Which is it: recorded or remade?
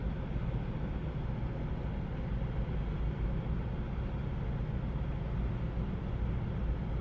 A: recorded